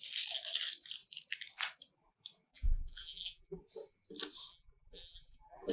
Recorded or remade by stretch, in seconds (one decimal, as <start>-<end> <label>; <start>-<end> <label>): 0.0-2.5 recorded; 2.5-3.6 remade; 3.6-4.5 recorded; 4.5-5.7 remade